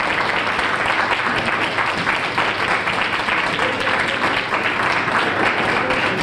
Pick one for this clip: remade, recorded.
recorded